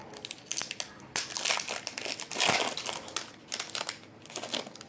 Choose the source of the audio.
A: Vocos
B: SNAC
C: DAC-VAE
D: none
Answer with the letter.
D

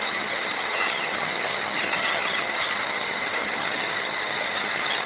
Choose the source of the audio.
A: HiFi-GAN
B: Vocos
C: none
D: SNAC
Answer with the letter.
A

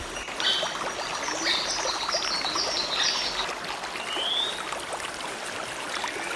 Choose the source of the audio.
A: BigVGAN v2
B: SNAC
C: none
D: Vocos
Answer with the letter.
C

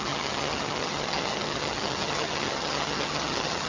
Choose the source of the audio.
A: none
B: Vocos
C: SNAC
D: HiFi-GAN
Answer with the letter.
D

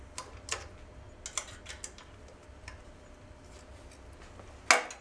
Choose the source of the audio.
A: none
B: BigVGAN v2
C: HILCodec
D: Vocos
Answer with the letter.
A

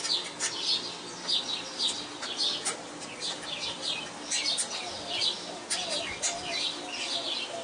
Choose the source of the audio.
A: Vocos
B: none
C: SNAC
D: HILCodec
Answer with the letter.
B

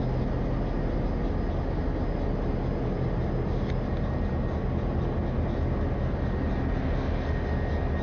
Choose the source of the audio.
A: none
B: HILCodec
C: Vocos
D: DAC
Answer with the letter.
A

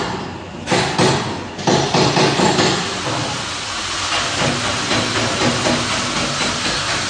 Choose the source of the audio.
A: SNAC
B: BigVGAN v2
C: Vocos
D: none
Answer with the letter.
D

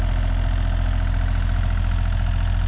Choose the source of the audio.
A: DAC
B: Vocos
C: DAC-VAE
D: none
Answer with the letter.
D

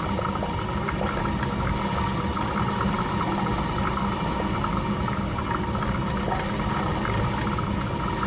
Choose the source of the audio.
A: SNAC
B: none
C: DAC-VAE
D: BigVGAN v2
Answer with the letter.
B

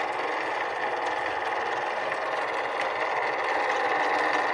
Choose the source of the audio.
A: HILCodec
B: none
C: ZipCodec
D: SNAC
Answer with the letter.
B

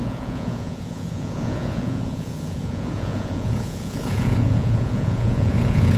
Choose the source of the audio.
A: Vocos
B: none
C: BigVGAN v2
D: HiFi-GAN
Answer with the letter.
A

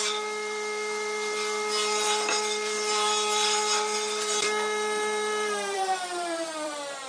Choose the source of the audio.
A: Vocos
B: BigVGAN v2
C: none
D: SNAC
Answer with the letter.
B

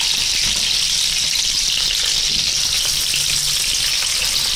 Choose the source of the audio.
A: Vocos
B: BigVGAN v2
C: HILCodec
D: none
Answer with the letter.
D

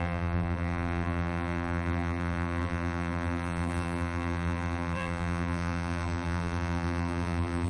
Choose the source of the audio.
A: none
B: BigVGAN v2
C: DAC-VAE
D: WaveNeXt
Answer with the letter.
B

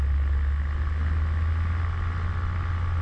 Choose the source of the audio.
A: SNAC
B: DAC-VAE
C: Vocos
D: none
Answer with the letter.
D